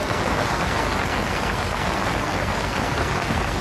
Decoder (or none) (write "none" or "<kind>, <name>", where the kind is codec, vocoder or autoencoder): codec, SNAC